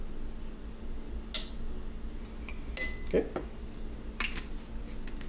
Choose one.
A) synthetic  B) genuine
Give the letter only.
B